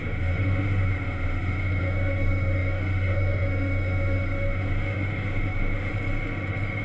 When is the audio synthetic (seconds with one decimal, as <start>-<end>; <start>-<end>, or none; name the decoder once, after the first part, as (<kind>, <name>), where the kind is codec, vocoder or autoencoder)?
0.0-5.9 (autoencoder, DAC-VAE)